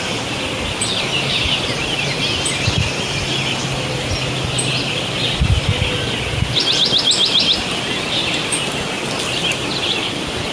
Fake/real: real